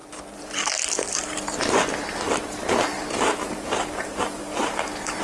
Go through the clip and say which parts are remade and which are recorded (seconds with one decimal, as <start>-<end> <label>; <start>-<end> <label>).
0.0-2.3 remade; 2.3-2.9 recorded; 2.9-5.2 remade